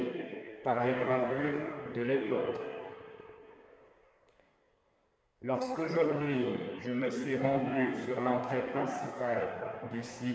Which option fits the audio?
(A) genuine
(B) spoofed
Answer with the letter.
B